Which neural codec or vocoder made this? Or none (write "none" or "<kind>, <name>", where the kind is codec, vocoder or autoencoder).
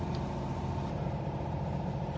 none